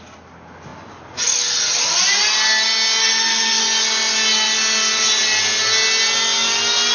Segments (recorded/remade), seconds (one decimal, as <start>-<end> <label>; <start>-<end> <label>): 0.0-3.0 recorded; 3.0-3.6 remade; 3.6-6.9 recorded

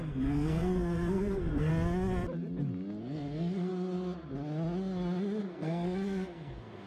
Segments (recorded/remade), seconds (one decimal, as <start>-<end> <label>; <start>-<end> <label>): 0.0-1.7 remade; 1.7-3.0 recorded; 3.0-3.7 remade; 3.7-5.4 recorded; 5.4-6.9 remade